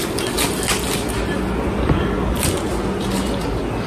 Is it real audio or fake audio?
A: real